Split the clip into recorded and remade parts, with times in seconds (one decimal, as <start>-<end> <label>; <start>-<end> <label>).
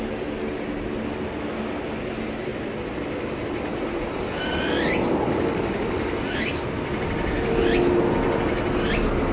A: 0.0-9.3 recorded